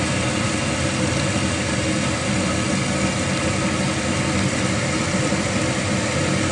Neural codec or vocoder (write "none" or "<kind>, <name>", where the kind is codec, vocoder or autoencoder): none